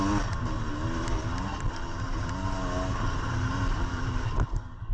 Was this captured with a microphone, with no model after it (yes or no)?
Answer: yes